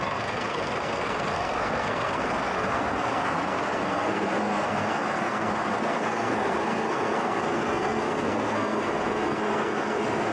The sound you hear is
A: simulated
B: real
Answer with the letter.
A